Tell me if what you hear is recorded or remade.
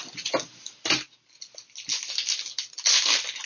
recorded